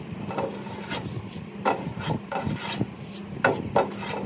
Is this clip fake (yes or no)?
no